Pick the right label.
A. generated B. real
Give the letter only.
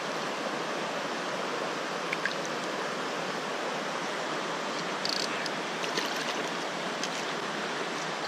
B